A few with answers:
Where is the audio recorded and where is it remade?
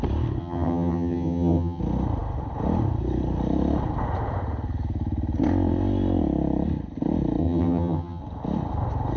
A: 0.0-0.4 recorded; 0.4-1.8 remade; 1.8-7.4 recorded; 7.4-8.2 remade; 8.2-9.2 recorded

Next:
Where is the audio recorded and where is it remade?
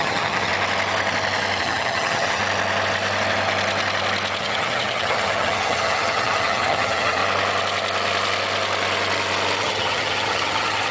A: 0.0-0.5 remade; 0.5-1.6 recorded; 1.6-2.4 remade; 2.4-4.4 recorded; 4.4-7.2 remade; 7.2-9.6 recorded; 9.6-10.9 remade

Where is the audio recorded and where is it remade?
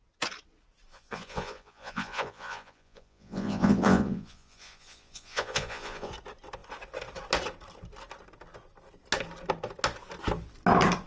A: 0.0-0.9 recorded; 0.9-6.1 remade; 6.1-11.1 recorded